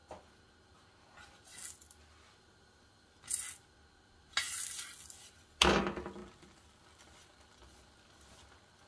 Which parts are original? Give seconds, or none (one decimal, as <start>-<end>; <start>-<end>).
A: 0.0-8.9